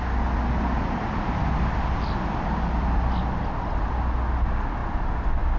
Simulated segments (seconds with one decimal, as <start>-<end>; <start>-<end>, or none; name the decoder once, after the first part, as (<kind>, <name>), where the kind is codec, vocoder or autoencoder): none